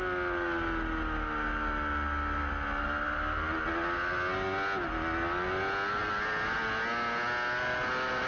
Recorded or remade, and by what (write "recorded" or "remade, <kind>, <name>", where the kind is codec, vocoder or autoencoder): recorded